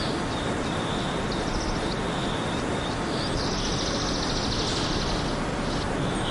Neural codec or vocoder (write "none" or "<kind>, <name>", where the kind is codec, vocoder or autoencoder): none